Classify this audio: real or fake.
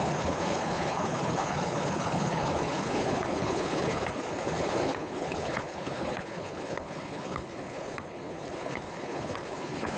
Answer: fake